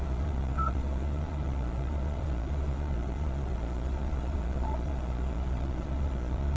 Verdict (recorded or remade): remade